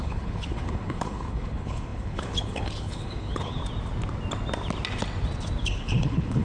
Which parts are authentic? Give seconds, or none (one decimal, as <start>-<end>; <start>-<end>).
3.6-5.6